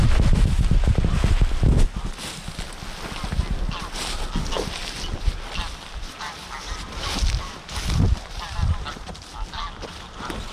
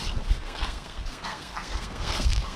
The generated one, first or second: second